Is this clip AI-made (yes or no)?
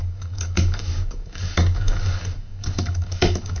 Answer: yes